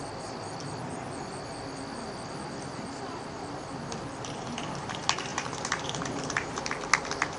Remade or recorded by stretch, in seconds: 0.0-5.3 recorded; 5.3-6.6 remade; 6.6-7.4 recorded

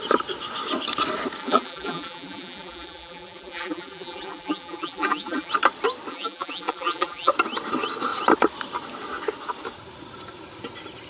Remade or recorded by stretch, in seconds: 0.0-1.4 recorded; 1.4-5.5 remade; 5.5-6.1 recorded; 6.1-7.3 remade; 7.3-11.1 recorded

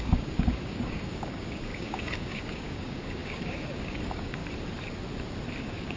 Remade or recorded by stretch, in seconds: 0.0-4.4 remade; 4.4-5.6 recorded; 5.6-6.0 remade